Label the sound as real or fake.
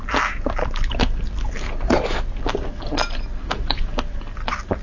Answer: real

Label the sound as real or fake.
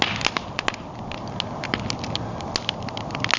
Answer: real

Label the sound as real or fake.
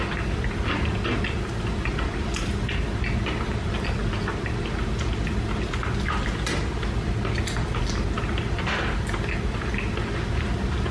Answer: real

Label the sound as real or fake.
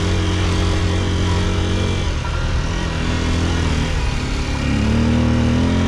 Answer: real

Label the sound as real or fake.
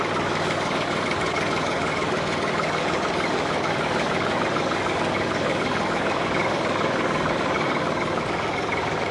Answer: fake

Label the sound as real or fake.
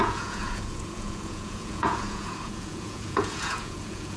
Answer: fake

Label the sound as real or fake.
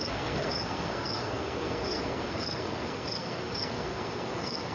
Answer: fake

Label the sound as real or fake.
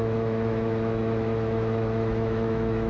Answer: fake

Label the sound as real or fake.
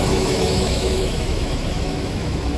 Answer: fake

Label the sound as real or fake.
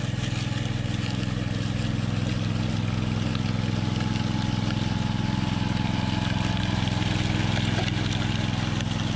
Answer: real